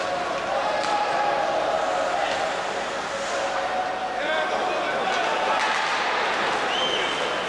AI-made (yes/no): no